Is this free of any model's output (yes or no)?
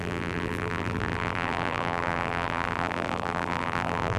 no